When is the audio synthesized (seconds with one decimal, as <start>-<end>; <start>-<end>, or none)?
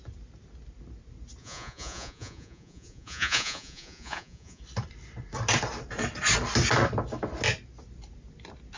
1.4-4.6